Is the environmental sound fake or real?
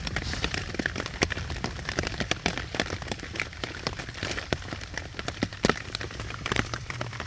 fake